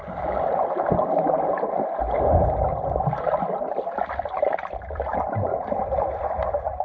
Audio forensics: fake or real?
real